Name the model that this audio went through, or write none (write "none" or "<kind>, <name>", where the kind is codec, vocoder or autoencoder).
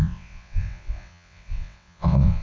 vocoder, WaveNeXt